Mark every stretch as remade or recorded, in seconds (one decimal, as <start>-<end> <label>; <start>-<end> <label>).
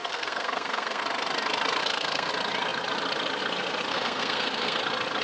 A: 0.0-1.0 remade; 1.0-1.8 recorded; 1.8-2.3 remade; 2.3-3.9 recorded; 3.9-4.8 remade; 4.8-5.2 recorded